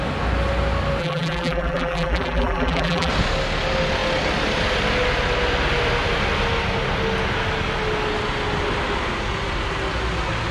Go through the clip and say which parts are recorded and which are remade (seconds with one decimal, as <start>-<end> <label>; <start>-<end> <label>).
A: 0.0-1.0 recorded; 1.0-3.1 remade; 3.1-10.5 recorded